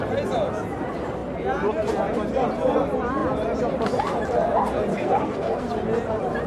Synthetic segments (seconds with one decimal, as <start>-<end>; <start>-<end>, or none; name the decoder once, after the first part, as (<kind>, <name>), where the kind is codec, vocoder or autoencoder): 4.9-5.7 (codec, SNAC)